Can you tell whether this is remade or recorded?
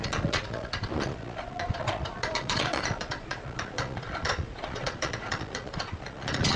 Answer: remade